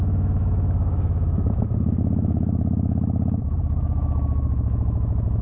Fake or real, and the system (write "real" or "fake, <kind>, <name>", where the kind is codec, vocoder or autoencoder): fake, autoencoder, DAC-VAE